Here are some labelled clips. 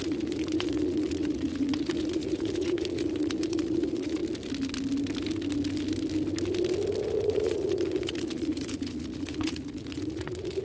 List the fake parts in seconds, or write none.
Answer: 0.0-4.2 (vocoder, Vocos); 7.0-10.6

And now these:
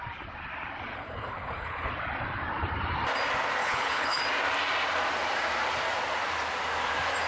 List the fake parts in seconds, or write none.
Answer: 0.9-1.9 (codec, HILCodec); 3.6-4.2

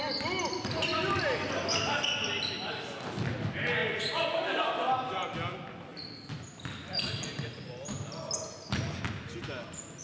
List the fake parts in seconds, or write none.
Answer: none

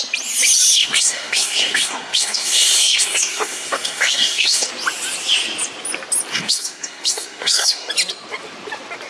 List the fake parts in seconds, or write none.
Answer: 0.8-4.7 (codec, SNAC); 6.3-7.9